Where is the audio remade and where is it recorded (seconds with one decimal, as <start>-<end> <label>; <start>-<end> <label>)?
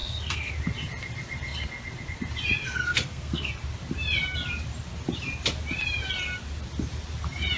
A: 0.0-0.5 remade; 0.5-2.6 recorded; 2.6-3.5 remade; 3.5-7.6 recorded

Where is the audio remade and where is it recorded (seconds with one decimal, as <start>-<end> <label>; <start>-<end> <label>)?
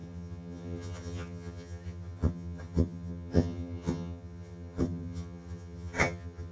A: 0.0-6.5 remade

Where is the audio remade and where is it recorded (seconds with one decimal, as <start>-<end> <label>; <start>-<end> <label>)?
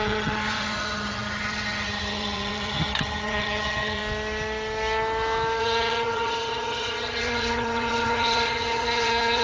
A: 0.0-4.0 remade; 4.0-5.6 recorded; 5.6-9.4 remade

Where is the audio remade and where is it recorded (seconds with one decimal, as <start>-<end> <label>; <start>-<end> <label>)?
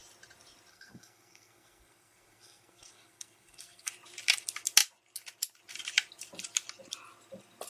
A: 0.0-0.7 recorded; 0.7-3.9 remade; 3.9-7.7 recorded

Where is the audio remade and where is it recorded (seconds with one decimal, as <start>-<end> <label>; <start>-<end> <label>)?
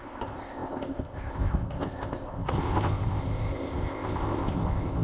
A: 0.0-5.0 remade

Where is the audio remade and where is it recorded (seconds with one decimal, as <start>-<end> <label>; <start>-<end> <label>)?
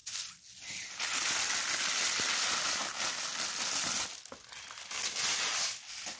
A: 0.0-6.2 recorded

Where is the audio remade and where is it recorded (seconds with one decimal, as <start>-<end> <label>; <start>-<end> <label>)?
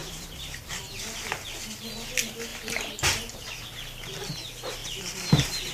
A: 0.0-0.9 remade; 0.9-2.5 recorded; 2.5-4.3 remade; 4.3-4.8 recorded; 4.8-5.7 remade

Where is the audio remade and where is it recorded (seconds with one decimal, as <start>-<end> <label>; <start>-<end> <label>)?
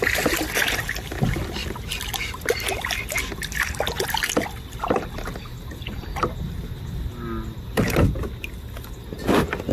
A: 0.0-5.5 recorded; 5.5-6.2 remade; 6.2-9.7 recorded